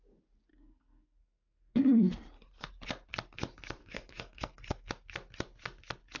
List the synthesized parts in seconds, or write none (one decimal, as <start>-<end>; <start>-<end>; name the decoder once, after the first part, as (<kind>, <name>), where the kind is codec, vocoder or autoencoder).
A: 0.5-2.1 (codec, SNAC); 3.8-4.9